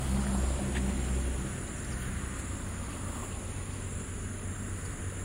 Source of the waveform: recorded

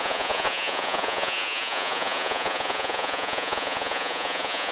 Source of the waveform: remade